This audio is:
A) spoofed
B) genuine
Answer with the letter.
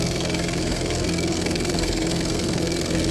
A